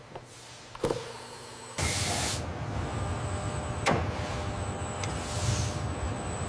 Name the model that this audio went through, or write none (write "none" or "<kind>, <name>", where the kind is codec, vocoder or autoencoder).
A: none